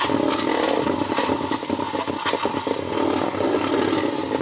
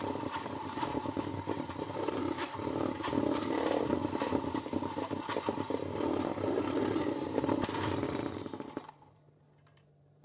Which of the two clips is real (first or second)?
first